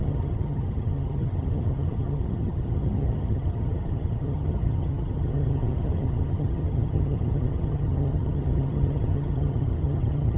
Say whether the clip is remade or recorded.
remade